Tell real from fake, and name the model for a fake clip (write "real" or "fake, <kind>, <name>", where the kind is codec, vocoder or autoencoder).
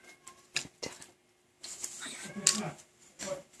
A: real